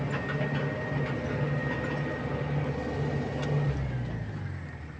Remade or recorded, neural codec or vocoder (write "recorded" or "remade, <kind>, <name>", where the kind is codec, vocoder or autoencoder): recorded